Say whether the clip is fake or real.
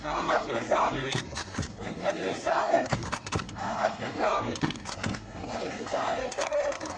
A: fake